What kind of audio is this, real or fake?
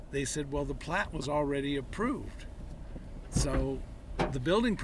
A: real